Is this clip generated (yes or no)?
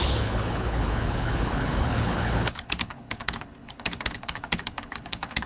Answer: yes